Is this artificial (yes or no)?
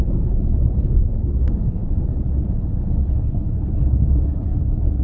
yes